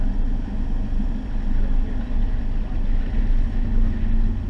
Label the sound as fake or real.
real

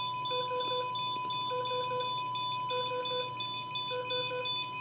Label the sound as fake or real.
real